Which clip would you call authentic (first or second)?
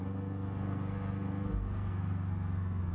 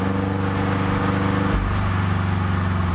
second